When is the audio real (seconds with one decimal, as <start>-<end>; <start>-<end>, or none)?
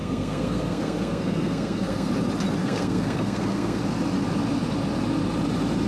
2.1-2.6; 3.8-5.9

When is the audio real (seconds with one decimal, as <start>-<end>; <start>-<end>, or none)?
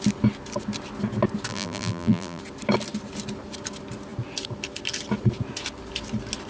0.0-1.5; 2.4-6.5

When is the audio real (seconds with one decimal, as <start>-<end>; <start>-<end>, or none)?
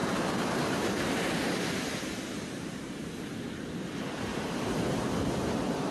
2.8-4.3; 5.1-5.9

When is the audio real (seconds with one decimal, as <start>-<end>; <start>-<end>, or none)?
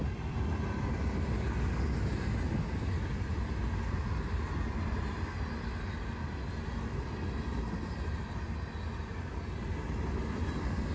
0.0-10.9